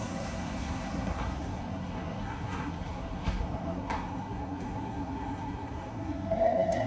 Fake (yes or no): yes